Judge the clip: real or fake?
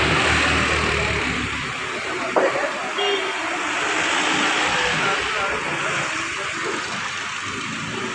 real